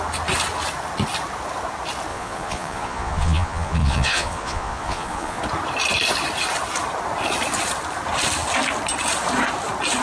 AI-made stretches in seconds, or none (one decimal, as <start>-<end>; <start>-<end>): 2.1-5.4